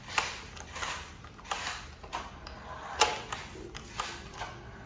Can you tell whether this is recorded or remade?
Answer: recorded